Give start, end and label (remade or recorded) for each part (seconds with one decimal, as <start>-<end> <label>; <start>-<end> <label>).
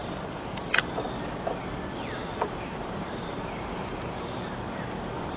0.0-0.6 remade; 0.6-2.2 recorded; 2.2-4.4 remade; 4.4-5.4 recorded